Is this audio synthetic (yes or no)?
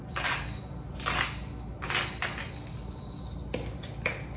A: no